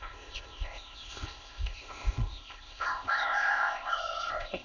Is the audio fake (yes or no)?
yes